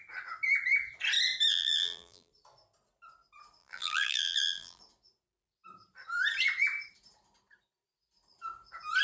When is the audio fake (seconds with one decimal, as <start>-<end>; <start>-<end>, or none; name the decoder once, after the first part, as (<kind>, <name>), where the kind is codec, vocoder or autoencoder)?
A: 1.5-2.3 (vocoder, BigVGAN v2); 3.6-4.8